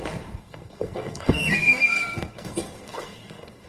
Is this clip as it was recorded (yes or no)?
no